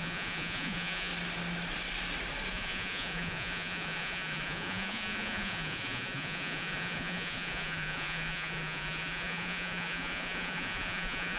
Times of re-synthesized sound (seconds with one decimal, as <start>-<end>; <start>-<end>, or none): 0.0-1.1; 2.5-11.4